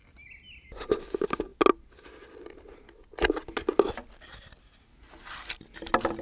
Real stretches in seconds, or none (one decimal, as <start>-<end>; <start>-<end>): 0.9-4.0; 4.6-6.2